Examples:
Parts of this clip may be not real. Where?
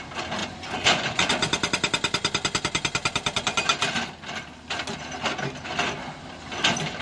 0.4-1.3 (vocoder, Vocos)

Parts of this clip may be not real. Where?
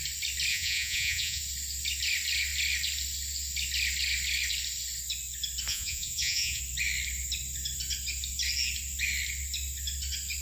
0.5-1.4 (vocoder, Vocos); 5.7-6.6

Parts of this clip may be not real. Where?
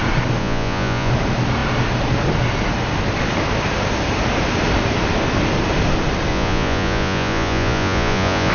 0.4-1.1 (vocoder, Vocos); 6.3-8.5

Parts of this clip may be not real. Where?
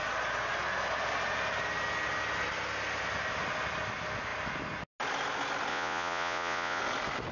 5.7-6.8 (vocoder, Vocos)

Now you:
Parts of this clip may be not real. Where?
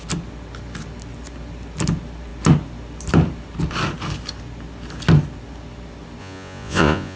6.2-7.2 (vocoder, Vocos)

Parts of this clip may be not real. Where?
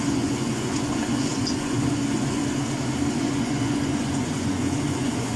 0.0-2.4 (vocoder, Vocos); 3.1-5.4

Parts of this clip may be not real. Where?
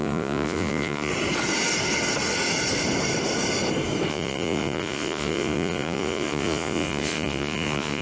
0.0-1.1 (vocoder, Vocos); 4.1-8.0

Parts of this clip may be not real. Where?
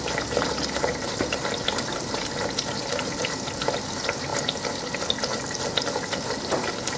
none